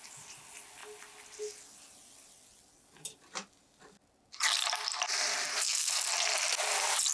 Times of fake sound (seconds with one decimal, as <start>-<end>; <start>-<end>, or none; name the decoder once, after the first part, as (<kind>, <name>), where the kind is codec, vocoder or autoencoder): 5.5-6.1 (codec, SNAC)